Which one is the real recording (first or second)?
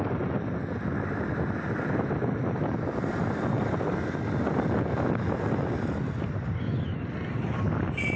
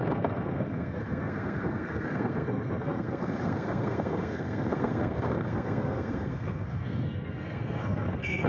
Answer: first